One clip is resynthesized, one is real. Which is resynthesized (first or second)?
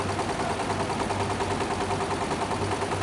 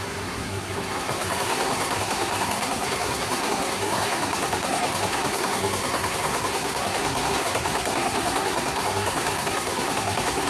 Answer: second